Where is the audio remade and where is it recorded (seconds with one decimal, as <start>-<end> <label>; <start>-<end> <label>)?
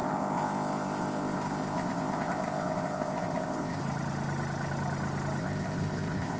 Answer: 0.0-3.8 remade; 3.8-5.4 recorded; 5.4-6.4 remade